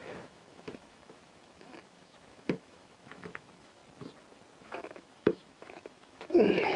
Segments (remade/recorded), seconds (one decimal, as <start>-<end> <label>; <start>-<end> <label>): 0.0-3.8 remade; 3.8-4.6 recorded; 4.6-6.8 remade

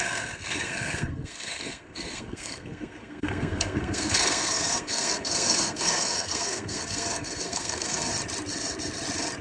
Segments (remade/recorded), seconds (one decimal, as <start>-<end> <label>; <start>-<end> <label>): 0.0-8.1 remade; 8.1-9.4 recorded

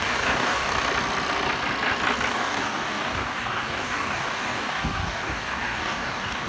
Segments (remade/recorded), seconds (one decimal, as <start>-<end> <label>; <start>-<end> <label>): 0.0-0.7 remade; 0.7-2.3 recorded; 2.3-6.5 remade

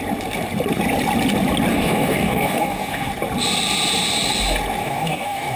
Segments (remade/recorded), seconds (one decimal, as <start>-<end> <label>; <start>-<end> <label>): 0.0-1.7 recorded; 1.7-3.1 remade; 3.1-4.8 recorded; 4.8-5.6 remade

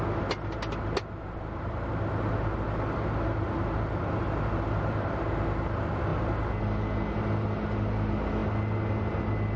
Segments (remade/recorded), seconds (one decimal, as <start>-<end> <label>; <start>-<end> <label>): 0.0-9.6 recorded

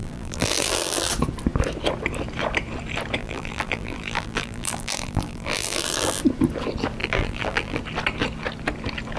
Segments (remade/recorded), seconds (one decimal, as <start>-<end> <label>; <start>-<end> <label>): 0.0-1.1 remade; 1.1-3.2 recorded; 3.2-6.2 remade; 6.2-7.0 recorded; 7.0-7.8 remade; 7.8-9.2 recorded